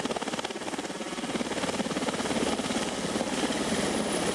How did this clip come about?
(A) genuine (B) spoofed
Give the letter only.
A